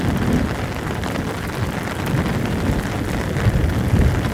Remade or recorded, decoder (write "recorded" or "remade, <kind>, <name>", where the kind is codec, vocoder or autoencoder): remade, vocoder, BigVGAN v2